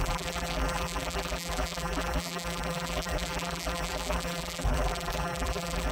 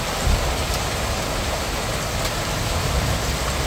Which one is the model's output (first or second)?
first